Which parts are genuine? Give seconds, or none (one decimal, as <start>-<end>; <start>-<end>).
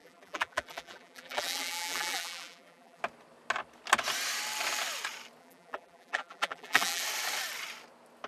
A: 3.0-5.4; 7.0-8.3